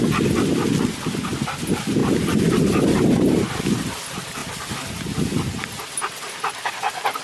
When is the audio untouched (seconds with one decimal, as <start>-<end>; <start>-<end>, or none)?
0.0-2.0; 3.6-7.2